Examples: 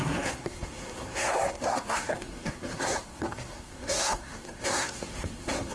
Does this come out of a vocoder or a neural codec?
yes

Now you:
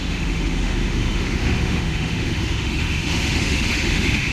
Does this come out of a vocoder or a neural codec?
yes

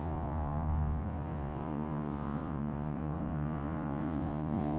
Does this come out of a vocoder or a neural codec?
yes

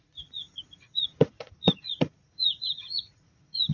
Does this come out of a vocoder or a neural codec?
yes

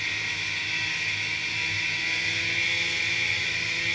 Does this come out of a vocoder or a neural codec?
no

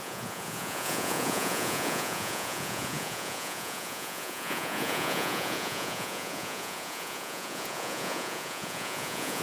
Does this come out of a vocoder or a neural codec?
yes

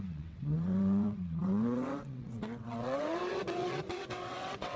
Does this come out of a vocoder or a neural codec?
yes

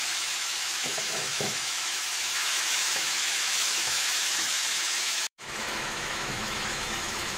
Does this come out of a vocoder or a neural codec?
yes